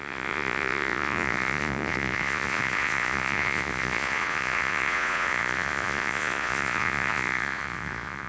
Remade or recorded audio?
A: remade